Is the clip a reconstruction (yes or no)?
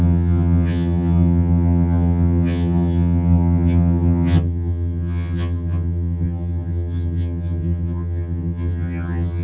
yes